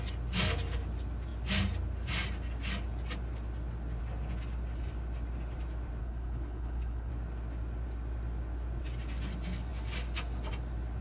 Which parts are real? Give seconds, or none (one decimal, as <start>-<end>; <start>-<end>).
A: 0.0-6.0; 7.1-11.0